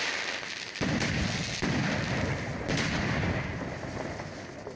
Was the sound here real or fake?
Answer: real